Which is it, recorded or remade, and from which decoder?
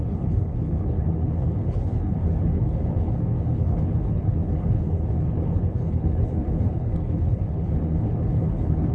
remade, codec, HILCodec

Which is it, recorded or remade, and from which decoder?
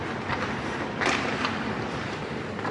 recorded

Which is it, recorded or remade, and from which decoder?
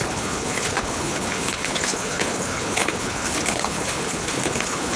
remade, codec, HILCodec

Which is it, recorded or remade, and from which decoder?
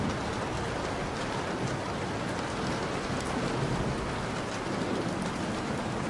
recorded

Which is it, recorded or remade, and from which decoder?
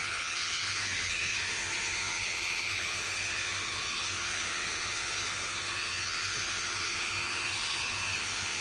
remade, codec, HILCodec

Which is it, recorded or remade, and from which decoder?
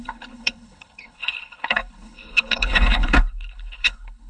remade, codec, HILCodec